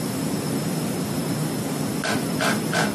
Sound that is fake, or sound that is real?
fake